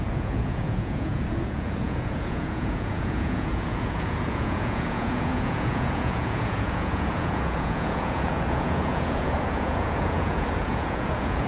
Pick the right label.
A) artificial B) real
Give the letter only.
A